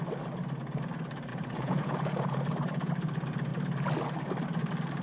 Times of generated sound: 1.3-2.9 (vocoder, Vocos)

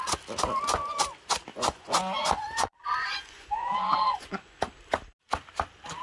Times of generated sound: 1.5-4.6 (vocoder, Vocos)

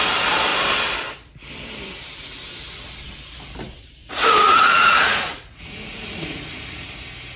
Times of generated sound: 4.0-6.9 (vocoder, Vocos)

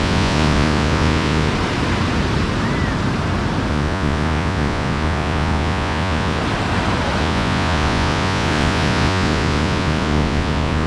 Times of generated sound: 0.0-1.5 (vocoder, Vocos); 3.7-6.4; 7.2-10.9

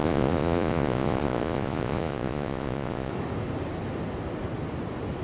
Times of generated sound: 0.0-3.1 (vocoder, Vocos)

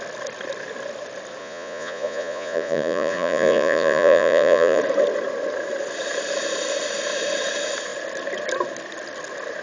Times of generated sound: 1.4-4.8 (vocoder, Vocos)